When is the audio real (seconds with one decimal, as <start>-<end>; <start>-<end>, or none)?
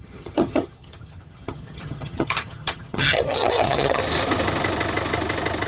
4.0-5.7